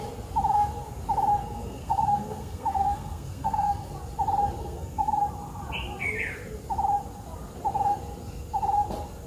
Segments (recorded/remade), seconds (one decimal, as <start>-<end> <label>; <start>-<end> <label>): 0.0-1.4 recorded; 1.4-3.9 remade; 3.9-4.6 recorded; 4.6-5.2 remade; 5.2-9.3 recorded